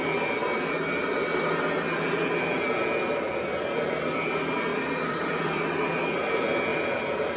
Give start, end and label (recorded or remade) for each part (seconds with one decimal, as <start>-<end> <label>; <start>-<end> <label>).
0.0-4.7 recorded; 4.7-5.6 remade; 5.6-6.7 recorded; 6.7-7.4 remade